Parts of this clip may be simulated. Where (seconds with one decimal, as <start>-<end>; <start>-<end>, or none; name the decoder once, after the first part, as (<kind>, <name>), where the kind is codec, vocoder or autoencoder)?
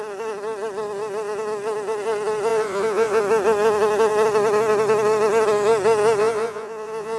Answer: 2.5-3.2 (vocoder, Vocos); 6.2-7.2